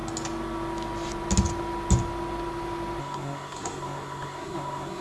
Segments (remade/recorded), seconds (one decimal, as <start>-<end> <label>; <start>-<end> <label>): 0.0-3.0 recorded; 3.0-5.0 remade